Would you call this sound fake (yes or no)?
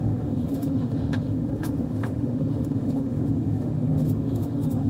yes